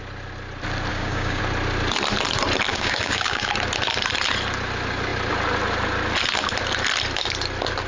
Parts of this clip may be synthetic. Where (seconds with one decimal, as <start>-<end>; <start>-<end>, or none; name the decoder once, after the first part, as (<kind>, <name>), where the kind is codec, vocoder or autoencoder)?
0.9-1.4 (codec, DAC); 2.7-3.5